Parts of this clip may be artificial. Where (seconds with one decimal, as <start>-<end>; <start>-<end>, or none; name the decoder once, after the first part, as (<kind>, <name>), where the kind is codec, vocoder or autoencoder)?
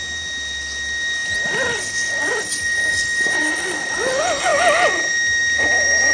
none